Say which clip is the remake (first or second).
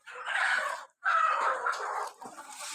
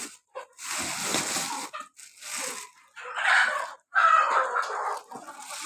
first